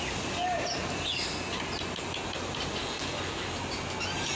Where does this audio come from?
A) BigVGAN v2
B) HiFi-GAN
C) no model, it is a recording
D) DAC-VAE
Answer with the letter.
C